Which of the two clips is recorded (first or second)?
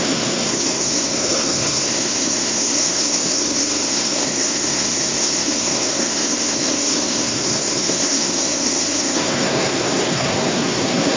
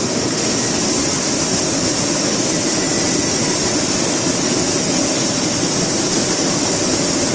second